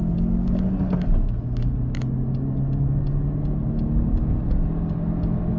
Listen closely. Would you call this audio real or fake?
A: real